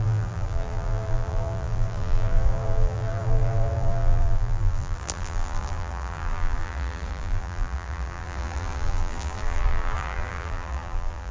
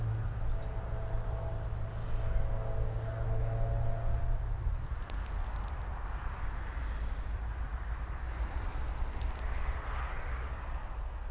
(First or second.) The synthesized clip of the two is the first